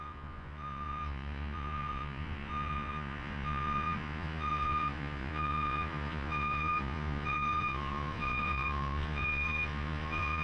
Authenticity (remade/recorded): remade